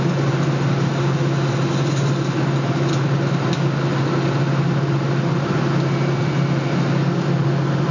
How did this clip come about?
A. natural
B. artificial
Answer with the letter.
A